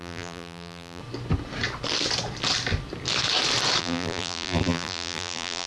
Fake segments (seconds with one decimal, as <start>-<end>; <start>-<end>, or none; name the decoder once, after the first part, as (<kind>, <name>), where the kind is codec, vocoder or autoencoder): 0.0-1.0 (vocoder, BigVGAN v2); 3.8-5.7